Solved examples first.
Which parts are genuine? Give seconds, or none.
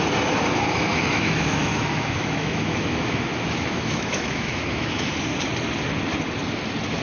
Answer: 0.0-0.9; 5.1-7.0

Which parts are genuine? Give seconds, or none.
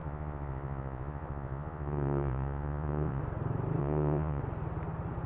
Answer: 3.2-3.8; 4.4-5.3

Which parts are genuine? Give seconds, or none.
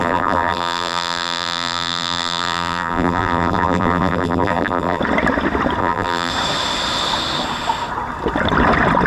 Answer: 5.0-5.8; 6.3-9.1